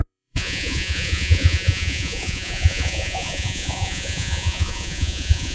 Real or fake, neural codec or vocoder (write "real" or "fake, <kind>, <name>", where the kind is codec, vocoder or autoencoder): fake, vocoder, Vocos